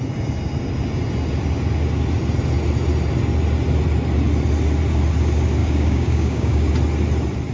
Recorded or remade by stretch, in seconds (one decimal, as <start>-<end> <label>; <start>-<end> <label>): 0.0-5.6 recorded; 5.6-6.7 remade; 6.7-7.5 recorded